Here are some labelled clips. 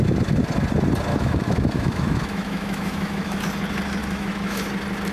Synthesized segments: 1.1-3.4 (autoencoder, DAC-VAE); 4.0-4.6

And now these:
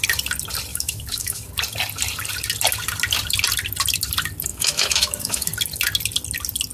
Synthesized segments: 0.7-1.5 (autoencoder, DAC-VAE); 4.5-5.5

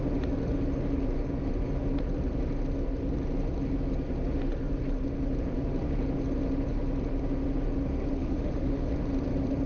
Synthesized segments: 8.2-8.9 (autoencoder, DAC-VAE)

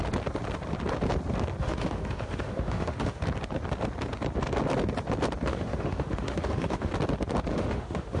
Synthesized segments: 1.6-3.2 (autoencoder, DAC-VAE); 5.5-6.9; 7.5-8.2

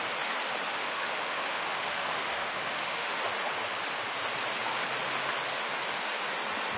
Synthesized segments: 0.7-3.2 (autoencoder, DAC-VAE)